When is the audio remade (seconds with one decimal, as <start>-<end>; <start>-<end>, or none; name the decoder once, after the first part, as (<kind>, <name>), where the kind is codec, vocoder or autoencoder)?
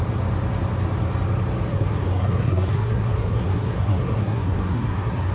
1.7-5.3 (codec, SNAC)